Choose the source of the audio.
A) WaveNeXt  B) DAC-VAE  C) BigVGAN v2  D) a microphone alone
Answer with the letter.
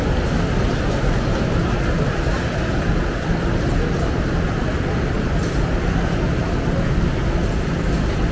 D